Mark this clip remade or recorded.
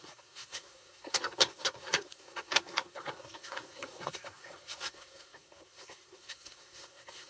remade